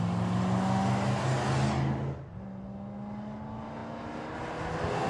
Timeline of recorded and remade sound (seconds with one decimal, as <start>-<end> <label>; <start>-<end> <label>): 0.0-5.1 recorded